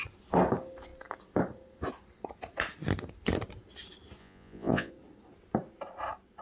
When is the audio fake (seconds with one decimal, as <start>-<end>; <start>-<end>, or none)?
4.2-4.9